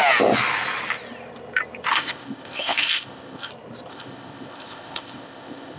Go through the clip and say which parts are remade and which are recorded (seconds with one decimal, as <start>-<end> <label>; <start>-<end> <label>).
0.0-1.9 recorded; 1.9-3.5 remade; 3.5-3.9 recorded; 3.9-5.8 remade